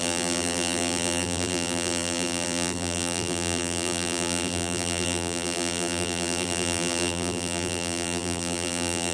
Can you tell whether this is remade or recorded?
remade